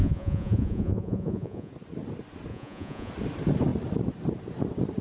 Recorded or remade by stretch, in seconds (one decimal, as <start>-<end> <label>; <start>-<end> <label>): 0.0-1.7 remade; 1.7-2.5 recorded; 2.5-3.1 remade; 3.1-5.0 recorded